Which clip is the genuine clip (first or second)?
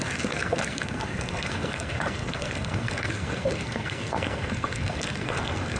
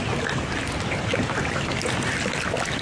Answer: second